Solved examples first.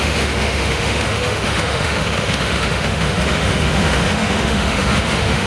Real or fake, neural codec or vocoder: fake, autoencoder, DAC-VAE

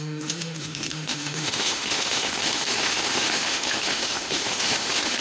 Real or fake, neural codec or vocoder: fake, autoencoder, DAC-VAE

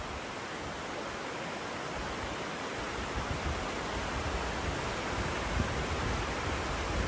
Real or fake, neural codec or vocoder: real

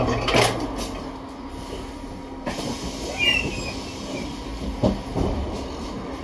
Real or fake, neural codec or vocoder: real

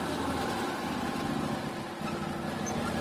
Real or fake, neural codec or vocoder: real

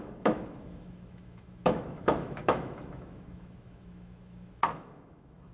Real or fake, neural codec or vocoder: fake, autoencoder, DAC-VAE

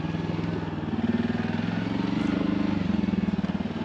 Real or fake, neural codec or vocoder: real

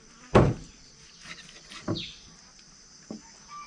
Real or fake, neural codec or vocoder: real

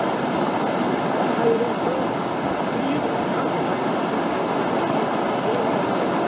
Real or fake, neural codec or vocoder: real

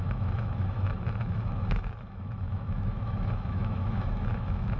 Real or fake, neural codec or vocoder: fake, autoencoder, DAC-VAE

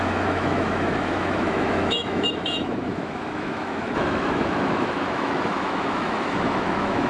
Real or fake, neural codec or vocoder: fake, autoencoder, DAC-VAE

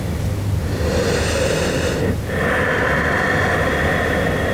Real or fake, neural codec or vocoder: real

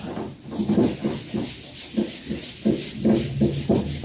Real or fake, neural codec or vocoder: real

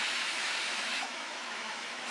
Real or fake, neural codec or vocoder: fake, autoencoder, DAC-VAE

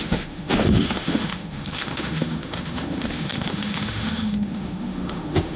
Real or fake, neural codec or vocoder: fake, autoencoder, DAC-VAE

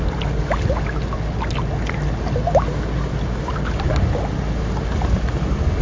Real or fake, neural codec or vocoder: real